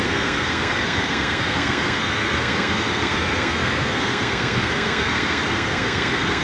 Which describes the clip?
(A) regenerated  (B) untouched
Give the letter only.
A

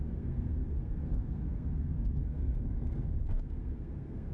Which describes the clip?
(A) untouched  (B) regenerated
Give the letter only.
B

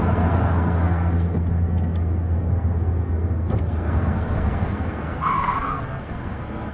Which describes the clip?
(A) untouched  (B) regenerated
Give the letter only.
B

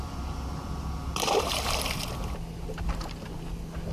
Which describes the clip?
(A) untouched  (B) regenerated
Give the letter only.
A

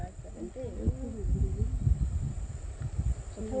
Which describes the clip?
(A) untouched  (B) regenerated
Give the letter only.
A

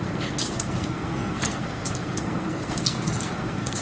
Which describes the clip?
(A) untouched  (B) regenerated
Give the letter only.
B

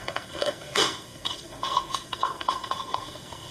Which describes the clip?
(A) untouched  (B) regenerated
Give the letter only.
B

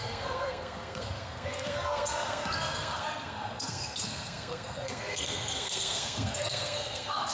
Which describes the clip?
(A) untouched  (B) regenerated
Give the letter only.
B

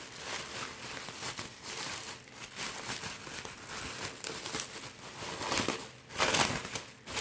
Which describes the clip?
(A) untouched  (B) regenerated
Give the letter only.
A